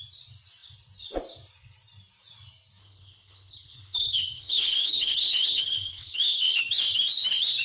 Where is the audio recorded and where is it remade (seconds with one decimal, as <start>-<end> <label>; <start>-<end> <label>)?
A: 0.0-2.8 recorded; 2.8-6.6 remade; 6.6-7.6 recorded